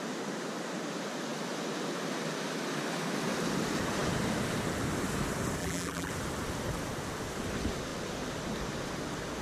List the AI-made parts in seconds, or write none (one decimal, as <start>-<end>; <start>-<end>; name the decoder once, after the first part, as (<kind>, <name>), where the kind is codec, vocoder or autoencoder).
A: 5.6-6.1 (vocoder, BigVGAN v2)